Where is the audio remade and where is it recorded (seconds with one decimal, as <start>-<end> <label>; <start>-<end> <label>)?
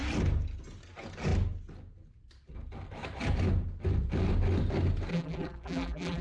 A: 0.0-5.1 recorded; 5.1-6.2 remade